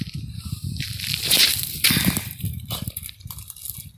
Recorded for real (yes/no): no